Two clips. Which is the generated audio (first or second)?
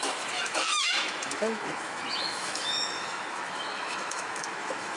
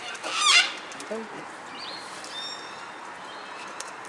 first